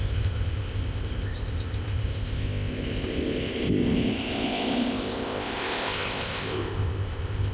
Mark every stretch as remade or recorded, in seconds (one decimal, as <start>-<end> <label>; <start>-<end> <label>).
0.0-7.5 remade

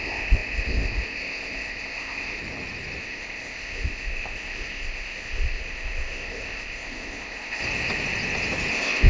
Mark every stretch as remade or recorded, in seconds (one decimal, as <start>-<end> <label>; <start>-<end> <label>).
0.0-2.4 remade; 2.4-3.0 recorded; 3.0-7.6 remade; 7.6-8.7 recorded; 8.7-9.1 remade

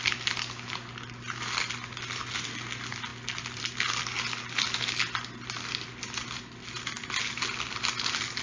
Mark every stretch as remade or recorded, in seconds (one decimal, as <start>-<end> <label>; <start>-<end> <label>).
0.0-8.4 recorded

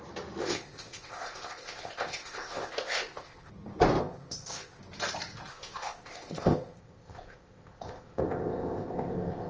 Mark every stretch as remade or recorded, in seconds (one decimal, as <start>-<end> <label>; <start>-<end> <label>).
0.0-0.4 recorded; 0.4-3.5 remade; 3.5-4.0 recorded; 4.0-4.8 remade; 4.8-5.5 recorded; 5.5-9.5 remade

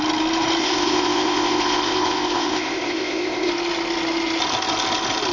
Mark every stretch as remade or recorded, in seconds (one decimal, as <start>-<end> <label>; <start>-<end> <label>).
0.0-0.6 recorded; 0.6-3.5 remade; 3.5-5.3 recorded

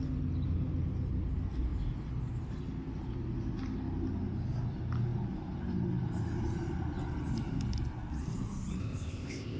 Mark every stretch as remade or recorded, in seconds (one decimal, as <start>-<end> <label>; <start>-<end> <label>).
0.0-8.8 recorded; 8.8-9.6 remade